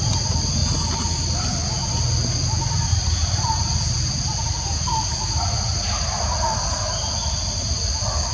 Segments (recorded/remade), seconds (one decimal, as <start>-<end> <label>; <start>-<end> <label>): 0.0-8.3 recorded

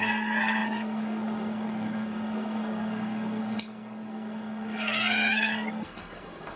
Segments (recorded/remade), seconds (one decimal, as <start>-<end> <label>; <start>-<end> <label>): 0.0-6.6 remade